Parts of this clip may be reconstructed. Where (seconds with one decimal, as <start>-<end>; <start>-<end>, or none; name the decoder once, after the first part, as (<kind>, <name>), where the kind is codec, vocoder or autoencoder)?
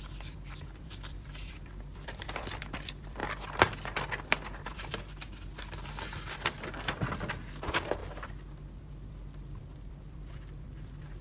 0.0-3.2 (vocoder, BigVGAN v2); 7.3-8.0; 8.6-11.2